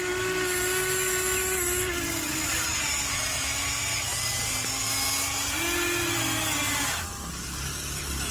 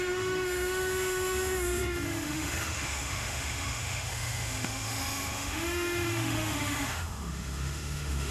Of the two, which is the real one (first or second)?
first